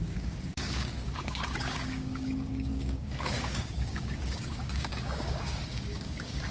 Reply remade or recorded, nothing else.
remade